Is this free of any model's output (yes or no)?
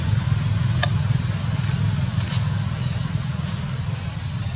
yes